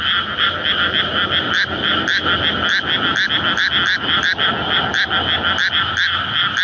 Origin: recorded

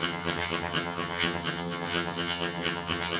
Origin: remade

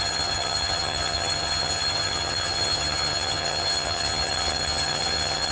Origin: remade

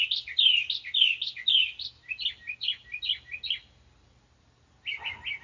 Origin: recorded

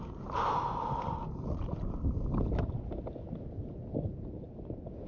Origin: recorded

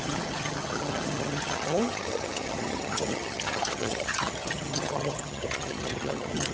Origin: remade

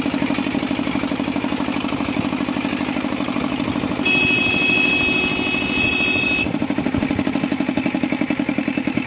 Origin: recorded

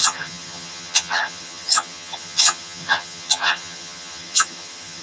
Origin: remade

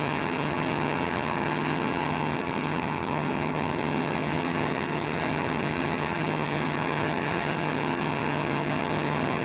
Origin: remade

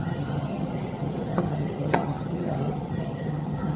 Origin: remade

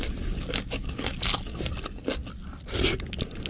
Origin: recorded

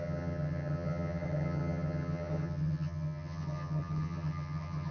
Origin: remade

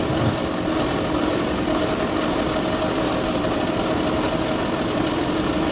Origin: recorded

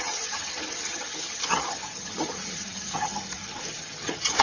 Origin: remade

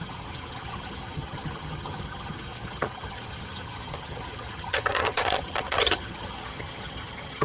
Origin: remade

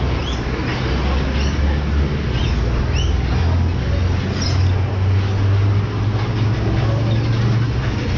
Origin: recorded